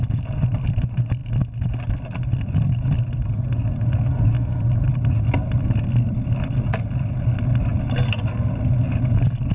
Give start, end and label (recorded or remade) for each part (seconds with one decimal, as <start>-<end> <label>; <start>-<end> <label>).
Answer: 0.0-9.5 recorded